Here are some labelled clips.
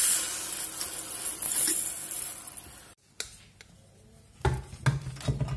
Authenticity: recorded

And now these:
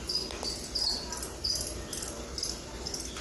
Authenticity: recorded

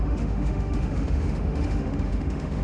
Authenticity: remade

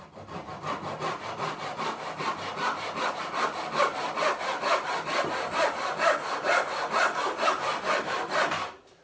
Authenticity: recorded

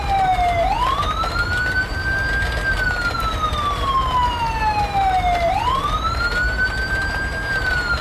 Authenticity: recorded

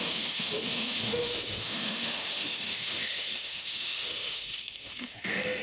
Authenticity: remade